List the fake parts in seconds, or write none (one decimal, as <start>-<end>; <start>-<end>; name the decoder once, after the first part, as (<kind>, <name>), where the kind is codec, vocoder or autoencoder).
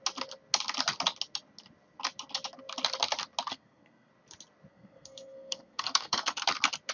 3.5-4.1 (codec, SNAC); 4.7-6.3